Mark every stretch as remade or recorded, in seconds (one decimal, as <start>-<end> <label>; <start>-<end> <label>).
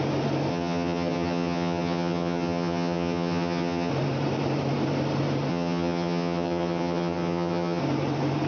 0.0-0.5 recorded; 0.5-3.9 remade; 3.9-5.5 recorded; 5.5-7.8 remade; 7.8-8.5 recorded